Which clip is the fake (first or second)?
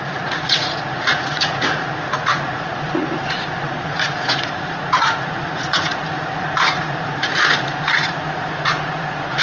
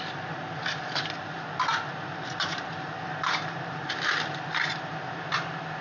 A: first